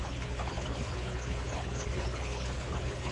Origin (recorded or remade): remade